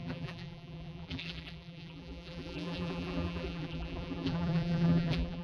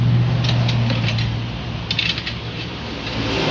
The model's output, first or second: first